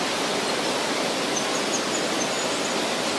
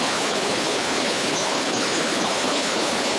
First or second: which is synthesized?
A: second